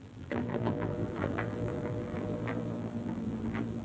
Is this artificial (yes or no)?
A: yes